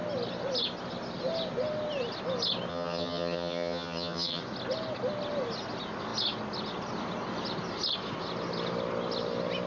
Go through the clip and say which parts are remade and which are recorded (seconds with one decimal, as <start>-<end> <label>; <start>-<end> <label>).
0.0-2.7 recorded; 2.7-4.4 remade; 4.4-9.7 recorded